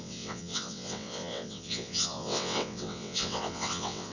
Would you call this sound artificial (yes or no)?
yes